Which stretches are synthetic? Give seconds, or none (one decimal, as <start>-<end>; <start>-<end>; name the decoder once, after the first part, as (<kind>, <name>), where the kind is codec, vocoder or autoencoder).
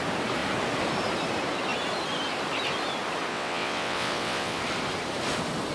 3.3-4.6 (vocoder, WaveNeXt)